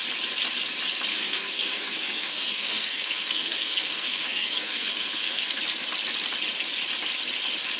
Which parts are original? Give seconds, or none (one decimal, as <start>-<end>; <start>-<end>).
0.0-1.1; 5.6-7.8